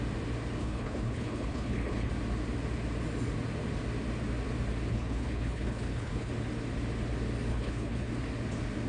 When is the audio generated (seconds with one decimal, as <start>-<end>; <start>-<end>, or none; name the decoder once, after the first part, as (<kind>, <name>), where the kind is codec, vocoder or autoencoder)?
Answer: 0.6-2.1 (codec, HILCodec); 4.9-6.3; 7.5-8.1